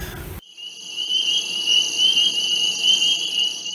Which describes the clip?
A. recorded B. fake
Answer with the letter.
A